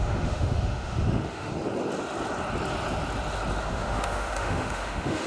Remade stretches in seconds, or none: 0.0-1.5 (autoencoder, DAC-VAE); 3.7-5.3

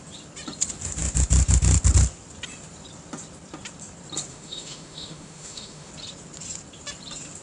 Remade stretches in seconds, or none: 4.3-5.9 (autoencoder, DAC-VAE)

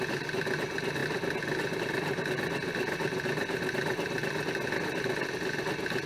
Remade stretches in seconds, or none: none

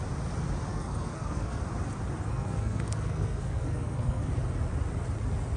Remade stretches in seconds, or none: 0.7-1.6 (codec, SNAC); 2.2-4.3

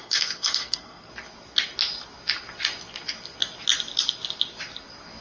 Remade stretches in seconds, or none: 0.0-1.1 (codec, SNAC)